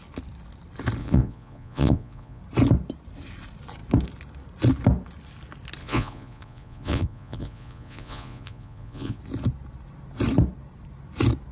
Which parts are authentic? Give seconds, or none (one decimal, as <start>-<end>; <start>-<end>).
0.0-1.0; 2.4-5.8; 9.2-11.5